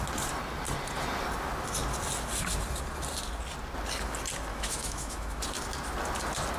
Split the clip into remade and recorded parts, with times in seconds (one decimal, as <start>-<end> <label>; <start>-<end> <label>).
0.0-4.5 recorded; 4.5-5.4 remade; 5.4-6.6 recorded